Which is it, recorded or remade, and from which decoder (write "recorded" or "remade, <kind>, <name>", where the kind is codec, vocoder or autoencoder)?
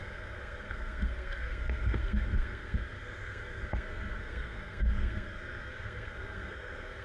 remade, codec, SNAC